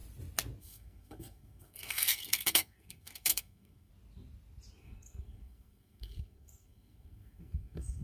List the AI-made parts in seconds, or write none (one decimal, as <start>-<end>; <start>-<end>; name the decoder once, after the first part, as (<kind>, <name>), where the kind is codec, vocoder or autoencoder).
0.6-3.9 (codec, SNAC); 4.8-8.0